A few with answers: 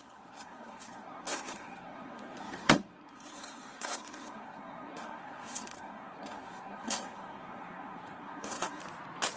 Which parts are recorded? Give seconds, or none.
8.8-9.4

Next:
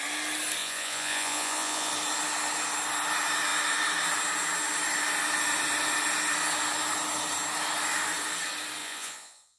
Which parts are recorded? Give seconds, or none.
0.0-0.6; 1.9-8.8

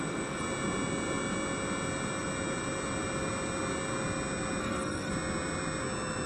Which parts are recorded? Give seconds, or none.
0.0-4.6; 5.1-6.3

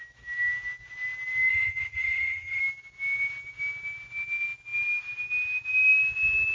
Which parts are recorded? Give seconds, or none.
0.0-1.5; 2.6-6.5

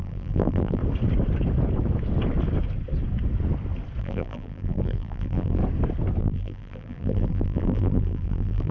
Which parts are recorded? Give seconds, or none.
0.8-4.0; 5.6-6.2

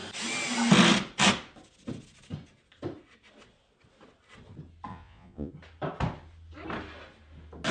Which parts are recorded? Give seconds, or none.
0.0-4.9; 5.5-7.7